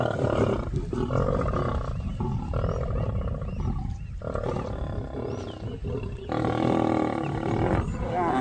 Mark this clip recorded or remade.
recorded